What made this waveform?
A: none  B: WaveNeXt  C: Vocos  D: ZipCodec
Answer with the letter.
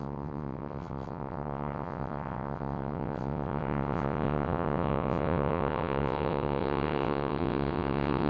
B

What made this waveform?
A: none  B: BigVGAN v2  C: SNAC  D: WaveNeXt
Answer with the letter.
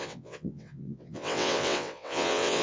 D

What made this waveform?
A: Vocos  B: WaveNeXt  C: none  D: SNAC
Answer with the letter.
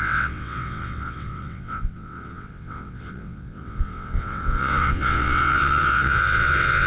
B